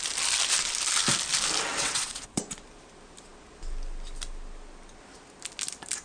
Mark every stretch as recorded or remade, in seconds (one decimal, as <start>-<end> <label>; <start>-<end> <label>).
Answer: 0.0-1.7 recorded; 1.7-2.4 remade; 2.4-6.0 recorded